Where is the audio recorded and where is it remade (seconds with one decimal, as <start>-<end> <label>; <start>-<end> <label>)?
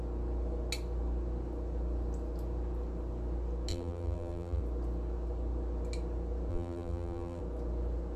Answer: 0.0-3.7 recorded; 3.7-4.6 remade; 4.6-6.5 recorded; 6.5-7.4 remade; 7.4-8.2 recorded